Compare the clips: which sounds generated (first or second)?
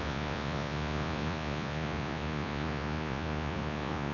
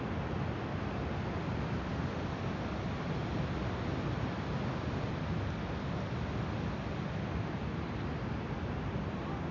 first